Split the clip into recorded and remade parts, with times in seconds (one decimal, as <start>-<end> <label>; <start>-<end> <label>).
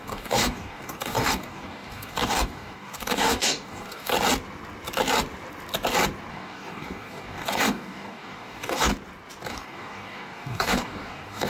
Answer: 0.0-4.1 remade; 4.1-6.3 recorded; 6.3-8.9 remade; 8.9-9.5 recorded; 9.5-11.5 remade